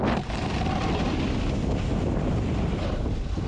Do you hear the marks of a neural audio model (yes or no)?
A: no